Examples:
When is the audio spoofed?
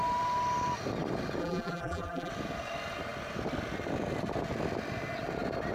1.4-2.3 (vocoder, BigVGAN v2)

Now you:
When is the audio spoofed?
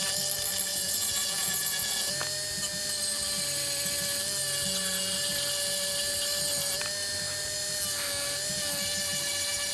0.7-2.1 (vocoder, Vocos)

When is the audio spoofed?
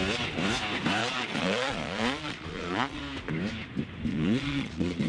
1.0-3.0 (vocoder, Vocos); 4.1-5.1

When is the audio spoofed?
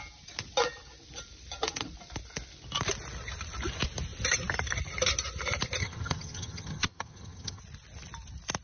5.8-7.6 (vocoder, HiFi-GAN)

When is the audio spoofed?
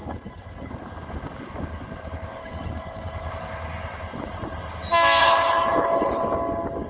0.0-0.7 (codec, HILCodec); 2.4-3.3; 5.2-6.2